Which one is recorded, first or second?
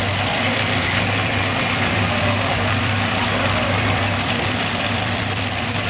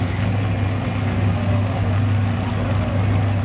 second